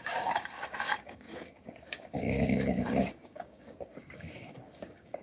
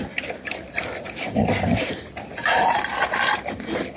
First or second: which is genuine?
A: second